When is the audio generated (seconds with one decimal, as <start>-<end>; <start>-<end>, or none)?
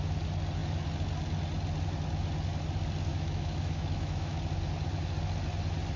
3.1-4.4